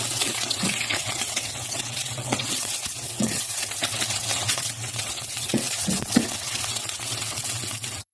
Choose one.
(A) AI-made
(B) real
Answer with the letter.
A